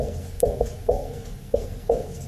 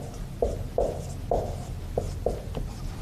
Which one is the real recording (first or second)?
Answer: second